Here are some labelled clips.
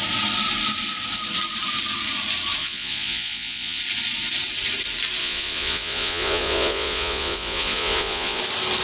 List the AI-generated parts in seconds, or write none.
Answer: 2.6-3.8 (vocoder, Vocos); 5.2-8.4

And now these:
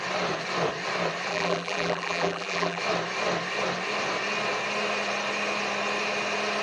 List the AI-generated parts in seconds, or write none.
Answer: 1.3-2.8 (vocoder, BigVGAN v2)

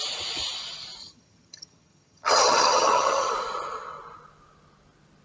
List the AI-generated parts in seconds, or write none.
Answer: 1.0-3.3 (vocoder, HiFi-GAN)

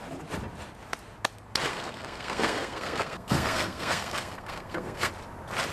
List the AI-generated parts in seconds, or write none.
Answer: 1.7-5.1 (codec, SNAC)

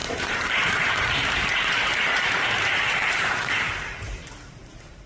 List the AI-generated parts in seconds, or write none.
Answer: 0.0-5.1 (vocoder, BigVGAN v2)

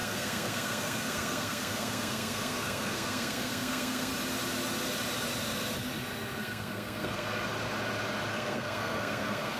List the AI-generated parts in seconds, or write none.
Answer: 0.0-4.1 (codec, SNAC); 6.4-7.5; 8.3-9.6

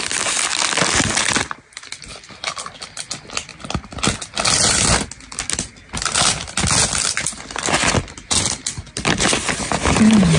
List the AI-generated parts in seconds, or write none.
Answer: none

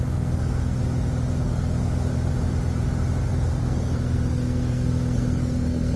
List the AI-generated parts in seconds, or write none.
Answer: 0.0-0.8 (codec, SNAC); 1.4-2.1; 3.3-6.0